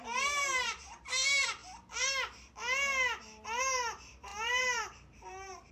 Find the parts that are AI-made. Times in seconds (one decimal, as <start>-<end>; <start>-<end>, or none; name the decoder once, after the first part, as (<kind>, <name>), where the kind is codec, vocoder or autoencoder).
0.0-1.6 (vocoder, BigVGAN v2); 3.6-5.7